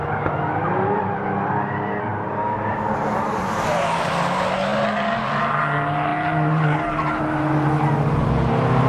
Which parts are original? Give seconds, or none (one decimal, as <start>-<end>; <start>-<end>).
0.0-8.9